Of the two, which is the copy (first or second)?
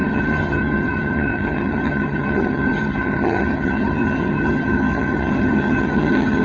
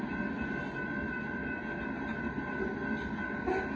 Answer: first